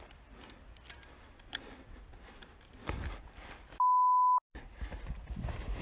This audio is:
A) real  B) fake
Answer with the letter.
A